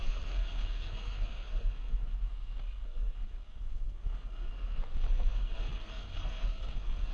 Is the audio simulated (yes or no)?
yes